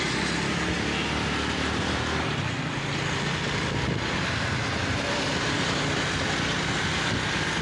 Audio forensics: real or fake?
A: real